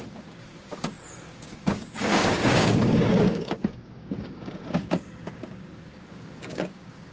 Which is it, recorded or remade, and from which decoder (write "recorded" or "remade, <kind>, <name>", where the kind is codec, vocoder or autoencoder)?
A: remade, codec, DAC